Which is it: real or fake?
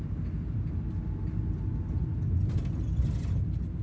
real